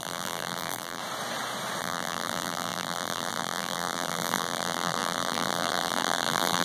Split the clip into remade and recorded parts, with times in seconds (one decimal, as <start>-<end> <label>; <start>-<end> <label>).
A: 0.0-1.0 remade; 1.0-1.8 recorded; 1.8-6.6 remade